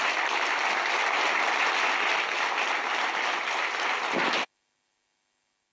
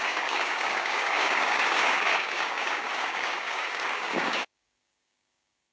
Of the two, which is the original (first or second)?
first